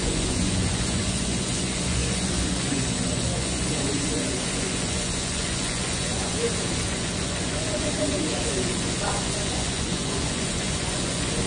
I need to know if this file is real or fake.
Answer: fake